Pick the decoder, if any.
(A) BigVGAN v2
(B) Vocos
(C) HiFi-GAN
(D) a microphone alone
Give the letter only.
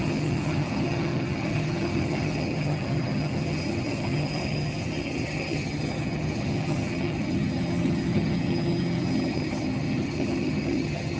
C